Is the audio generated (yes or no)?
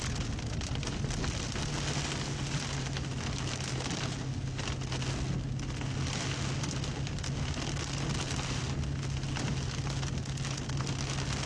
no